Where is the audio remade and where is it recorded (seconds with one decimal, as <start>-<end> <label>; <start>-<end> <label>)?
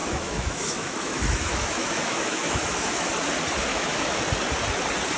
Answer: 0.0-3.1 remade; 3.1-3.7 recorded; 3.7-4.2 remade; 4.2-5.2 recorded